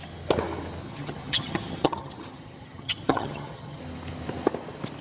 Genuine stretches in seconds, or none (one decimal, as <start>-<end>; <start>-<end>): 0.0-0.8; 3.8-5.0

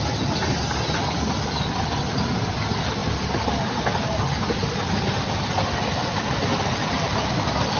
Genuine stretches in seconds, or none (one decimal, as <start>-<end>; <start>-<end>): 0.0-7.8

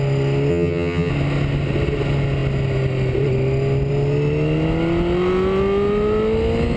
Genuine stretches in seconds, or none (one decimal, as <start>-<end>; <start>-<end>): 0.0-0.5; 1.1-6.8

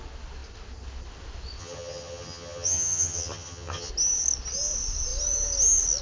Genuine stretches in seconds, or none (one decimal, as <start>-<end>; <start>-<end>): 0.0-1.6; 3.9-6.0